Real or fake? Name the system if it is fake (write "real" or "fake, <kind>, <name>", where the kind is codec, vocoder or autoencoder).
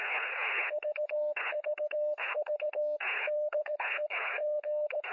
fake, codec, HILCodec